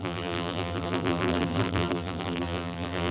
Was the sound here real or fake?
fake